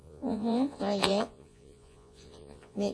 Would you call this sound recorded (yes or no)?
no